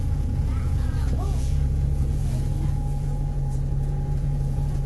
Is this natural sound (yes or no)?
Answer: no